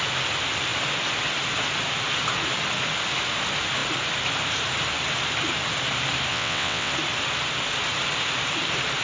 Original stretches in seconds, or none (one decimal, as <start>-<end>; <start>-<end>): 0.0-6.3; 6.9-9.0